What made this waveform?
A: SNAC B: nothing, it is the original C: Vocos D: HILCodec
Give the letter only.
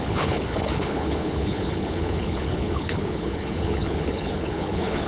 D